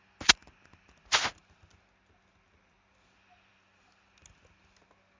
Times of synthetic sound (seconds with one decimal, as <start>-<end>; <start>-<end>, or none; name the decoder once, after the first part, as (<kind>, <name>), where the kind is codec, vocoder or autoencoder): none